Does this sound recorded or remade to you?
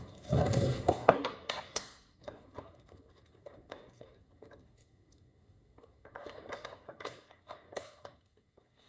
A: remade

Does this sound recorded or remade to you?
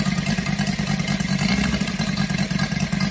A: recorded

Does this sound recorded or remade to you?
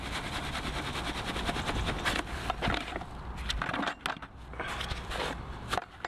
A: recorded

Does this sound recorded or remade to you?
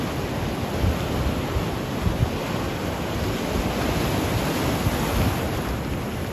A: recorded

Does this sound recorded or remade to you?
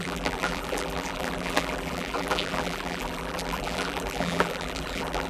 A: remade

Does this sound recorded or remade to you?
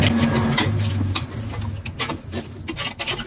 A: recorded